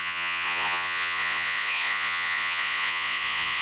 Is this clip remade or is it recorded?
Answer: remade